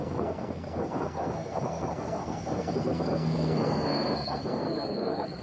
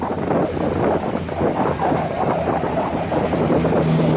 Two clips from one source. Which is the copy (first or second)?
first